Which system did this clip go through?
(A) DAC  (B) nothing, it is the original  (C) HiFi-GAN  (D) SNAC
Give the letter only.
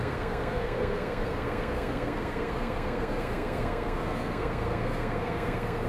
D